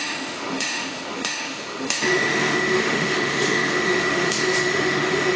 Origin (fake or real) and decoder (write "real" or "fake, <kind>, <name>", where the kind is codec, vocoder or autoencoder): fake, autoencoder, DAC-VAE